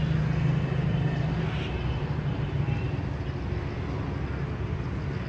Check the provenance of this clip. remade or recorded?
recorded